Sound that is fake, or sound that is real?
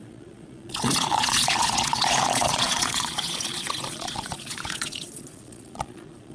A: fake